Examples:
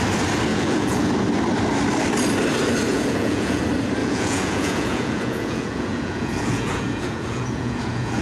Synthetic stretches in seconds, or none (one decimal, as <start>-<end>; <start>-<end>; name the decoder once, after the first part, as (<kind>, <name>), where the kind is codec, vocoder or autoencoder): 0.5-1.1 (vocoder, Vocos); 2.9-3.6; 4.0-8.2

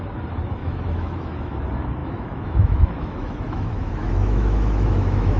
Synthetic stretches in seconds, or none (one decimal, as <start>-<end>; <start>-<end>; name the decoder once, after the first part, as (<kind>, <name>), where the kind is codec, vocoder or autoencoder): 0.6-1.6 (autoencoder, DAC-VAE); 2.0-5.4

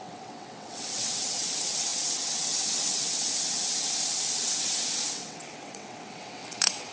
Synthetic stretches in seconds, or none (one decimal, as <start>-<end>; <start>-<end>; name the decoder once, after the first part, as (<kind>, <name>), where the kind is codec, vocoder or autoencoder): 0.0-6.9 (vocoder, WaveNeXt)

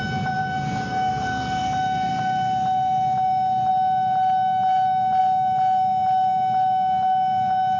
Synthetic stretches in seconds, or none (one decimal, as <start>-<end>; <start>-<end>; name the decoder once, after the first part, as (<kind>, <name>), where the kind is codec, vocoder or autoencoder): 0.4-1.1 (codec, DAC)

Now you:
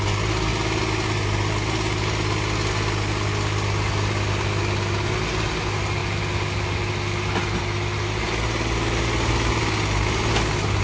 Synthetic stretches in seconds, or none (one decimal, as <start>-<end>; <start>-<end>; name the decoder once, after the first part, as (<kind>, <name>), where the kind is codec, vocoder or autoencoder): none

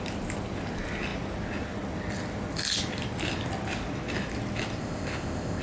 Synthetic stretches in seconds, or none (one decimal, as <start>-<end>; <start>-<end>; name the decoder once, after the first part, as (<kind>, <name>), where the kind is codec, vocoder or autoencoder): 4.8-5.6 (codec, ZipCodec)

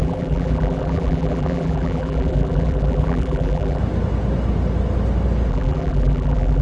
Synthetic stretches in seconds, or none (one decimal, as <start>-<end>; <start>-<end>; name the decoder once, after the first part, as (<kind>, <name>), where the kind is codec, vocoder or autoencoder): 0.0-3.8 (vocoder, BigVGAN v2); 5.5-6.6